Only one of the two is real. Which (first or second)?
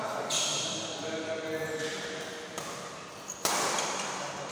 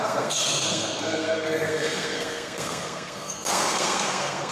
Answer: first